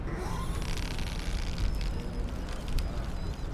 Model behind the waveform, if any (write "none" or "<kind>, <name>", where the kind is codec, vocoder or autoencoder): none